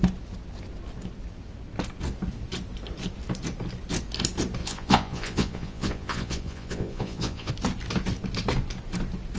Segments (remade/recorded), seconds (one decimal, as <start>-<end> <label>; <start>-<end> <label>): 0.0-4.6 recorded; 4.6-7.5 remade; 7.5-9.4 recorded